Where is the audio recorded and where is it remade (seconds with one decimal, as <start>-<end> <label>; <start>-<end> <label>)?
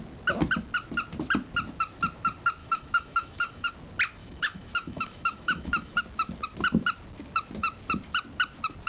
0.0-2.6 recorded; 2.6-3.7 remade; 3.7-4.2 recorded; 4.2-6.0 remade; 6.0-8.9 recorded